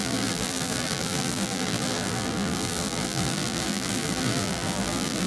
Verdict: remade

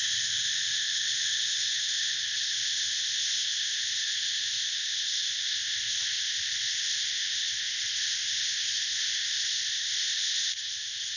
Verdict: remade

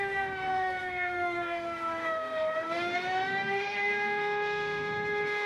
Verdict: remade